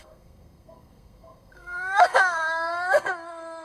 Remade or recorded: remade